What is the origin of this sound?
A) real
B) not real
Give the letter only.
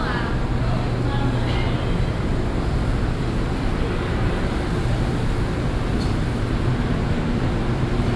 A